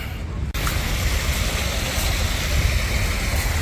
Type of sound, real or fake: real